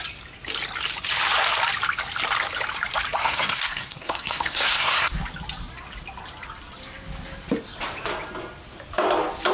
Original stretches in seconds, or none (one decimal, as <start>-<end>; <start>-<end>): 0.0-3.2; 5.1-9.5